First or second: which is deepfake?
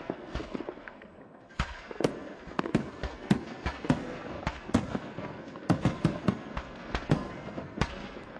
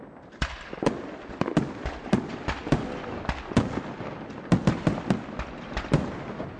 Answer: first